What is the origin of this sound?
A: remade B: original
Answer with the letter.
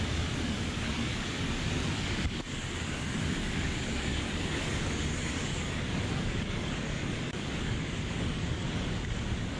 A